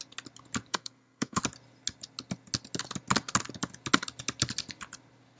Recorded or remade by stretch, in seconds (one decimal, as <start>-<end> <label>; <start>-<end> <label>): 0.0-0.7 recorded; 0.7-1.4 remade; 1.4-5.4 recorded